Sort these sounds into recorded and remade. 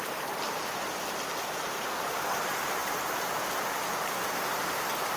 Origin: remade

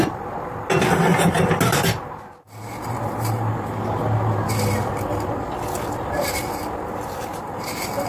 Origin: recorded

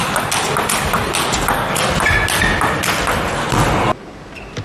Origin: recorded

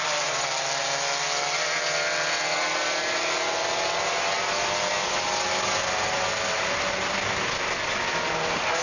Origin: recorded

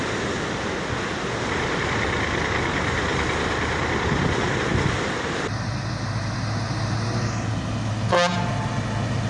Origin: recorded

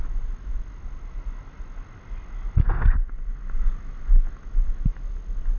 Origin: recorded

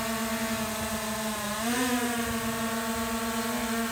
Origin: recorded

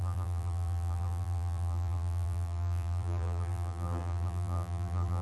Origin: remade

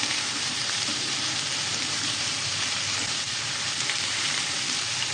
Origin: remade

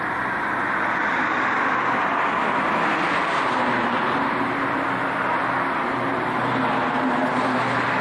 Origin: recorded